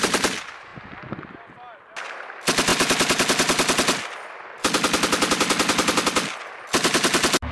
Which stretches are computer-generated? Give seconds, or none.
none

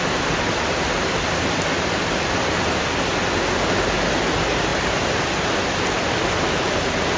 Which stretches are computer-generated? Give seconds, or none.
none

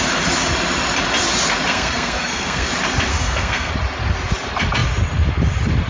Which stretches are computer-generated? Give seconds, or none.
1.7-2.7 (codec, SNAC); 3.1-3.7

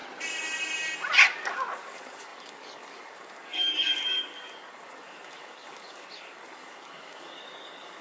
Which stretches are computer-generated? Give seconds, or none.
1.8-8.0 (codec, DAC)